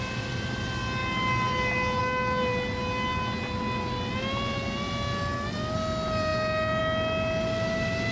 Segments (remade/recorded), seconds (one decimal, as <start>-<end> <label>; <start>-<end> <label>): 0.0-8.1 recorded